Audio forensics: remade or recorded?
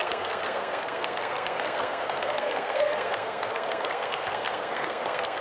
remade